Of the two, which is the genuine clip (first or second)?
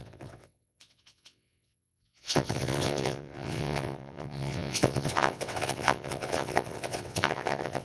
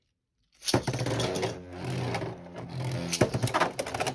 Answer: second